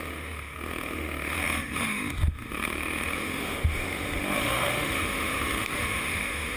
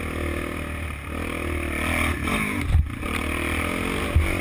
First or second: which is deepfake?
first